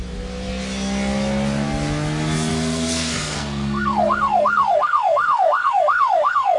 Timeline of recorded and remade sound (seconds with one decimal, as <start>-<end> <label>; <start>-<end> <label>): 0.0-2.5 recorded; 2.5-6.6 remade